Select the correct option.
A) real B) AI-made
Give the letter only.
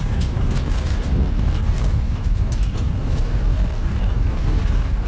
B